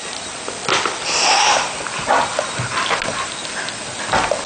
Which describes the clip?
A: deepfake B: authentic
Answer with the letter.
B